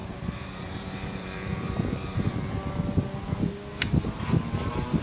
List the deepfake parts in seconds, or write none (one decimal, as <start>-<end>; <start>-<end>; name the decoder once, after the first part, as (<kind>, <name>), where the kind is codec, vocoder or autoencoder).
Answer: 0.0-2.3 (vocoder, BigVGAN v2); 3.7-5.0